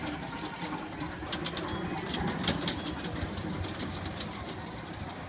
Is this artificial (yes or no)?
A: yes